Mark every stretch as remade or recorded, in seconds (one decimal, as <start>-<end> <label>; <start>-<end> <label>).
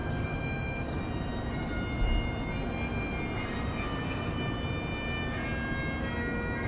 0.0-1.0 remade; 1.0-6.7 recorded